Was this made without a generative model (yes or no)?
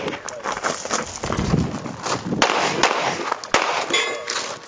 yes